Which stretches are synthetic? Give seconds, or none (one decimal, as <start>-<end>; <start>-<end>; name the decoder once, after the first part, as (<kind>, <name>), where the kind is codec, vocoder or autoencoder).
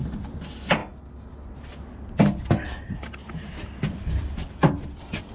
3.2-5.3 (vocoder, BigVGAN v2)